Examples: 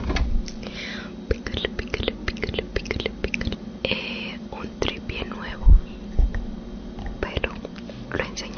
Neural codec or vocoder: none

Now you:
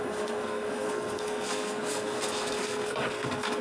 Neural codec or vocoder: codec, SNAC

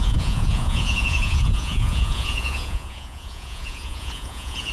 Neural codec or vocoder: vocoder, Vocos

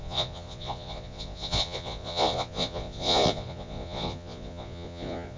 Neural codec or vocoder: vocoder, Vocos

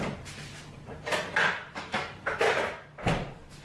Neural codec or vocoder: none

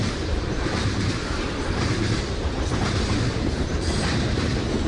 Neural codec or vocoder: vocoder, BigVGAN v2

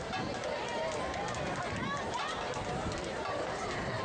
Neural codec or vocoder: none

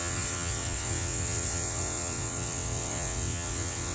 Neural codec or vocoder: vocoder, WaveNeXt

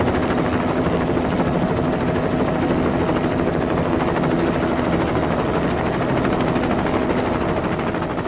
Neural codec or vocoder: none